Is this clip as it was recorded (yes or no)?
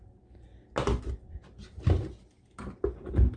yes